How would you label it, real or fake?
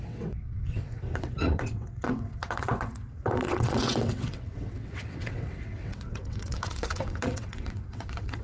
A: fake